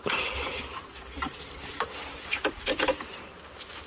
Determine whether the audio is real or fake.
fake